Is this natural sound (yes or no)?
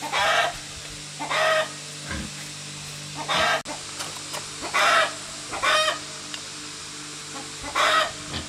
yes